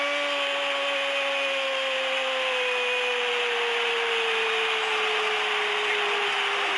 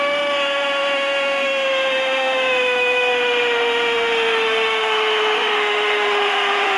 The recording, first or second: first